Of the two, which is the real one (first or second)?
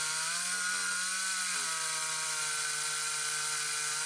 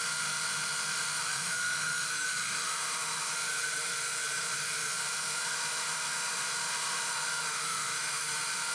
first